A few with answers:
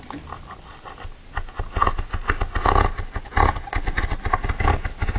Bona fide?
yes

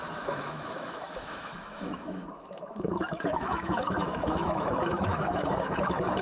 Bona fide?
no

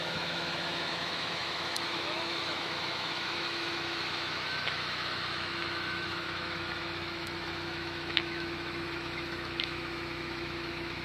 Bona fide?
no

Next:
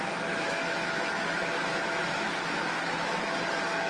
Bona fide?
no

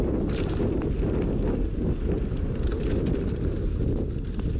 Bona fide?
yes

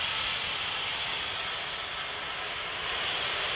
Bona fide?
yes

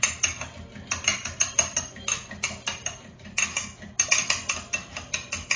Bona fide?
yes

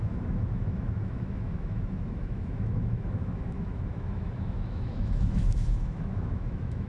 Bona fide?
no